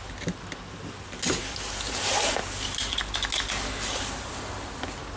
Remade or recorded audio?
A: recorded